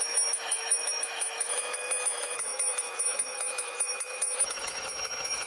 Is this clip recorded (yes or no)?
no